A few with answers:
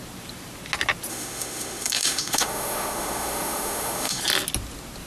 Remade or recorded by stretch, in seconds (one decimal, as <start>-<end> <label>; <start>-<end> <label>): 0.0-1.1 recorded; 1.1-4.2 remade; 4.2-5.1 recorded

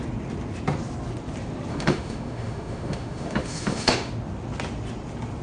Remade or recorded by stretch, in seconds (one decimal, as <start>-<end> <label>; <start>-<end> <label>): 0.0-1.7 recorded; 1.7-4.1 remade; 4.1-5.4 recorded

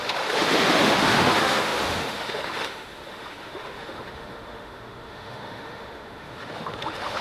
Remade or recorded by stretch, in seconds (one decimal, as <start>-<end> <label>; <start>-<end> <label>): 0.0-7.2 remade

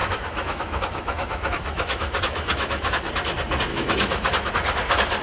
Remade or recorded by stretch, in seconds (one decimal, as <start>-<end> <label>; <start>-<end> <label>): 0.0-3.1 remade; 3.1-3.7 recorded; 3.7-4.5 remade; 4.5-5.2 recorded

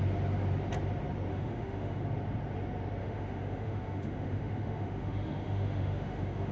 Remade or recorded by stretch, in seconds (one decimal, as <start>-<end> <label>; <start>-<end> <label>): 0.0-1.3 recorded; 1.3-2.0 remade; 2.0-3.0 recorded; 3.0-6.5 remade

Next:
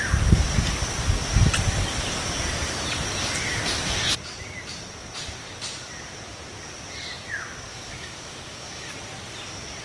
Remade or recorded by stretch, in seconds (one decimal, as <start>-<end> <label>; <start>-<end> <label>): 0.0-7.7 recorded; 7.7-8.9 remade; 8.9-9.8 recorded

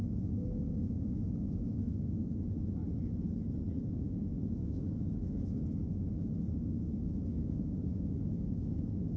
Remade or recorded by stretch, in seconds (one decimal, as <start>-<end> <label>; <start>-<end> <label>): 0.0-2.8 remade; 2.8-3.9 recorded; 3.9-9.2 remade

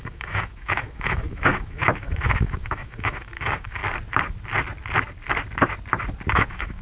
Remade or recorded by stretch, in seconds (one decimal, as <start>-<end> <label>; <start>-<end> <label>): 0.0-3.8 remade; 3.8-6.3 recorded; 6.3-6.8 remade